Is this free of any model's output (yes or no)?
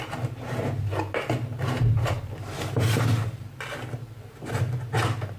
yes